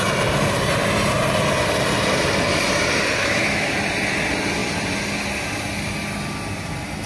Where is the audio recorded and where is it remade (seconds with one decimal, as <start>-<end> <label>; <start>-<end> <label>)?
0.0-3.2 recorded; 3.2-3.8 remade; 3.8-7.1 recorded